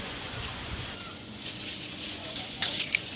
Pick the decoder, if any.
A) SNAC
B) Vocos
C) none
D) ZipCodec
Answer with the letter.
B